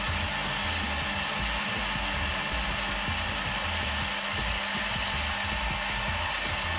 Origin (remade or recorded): recorded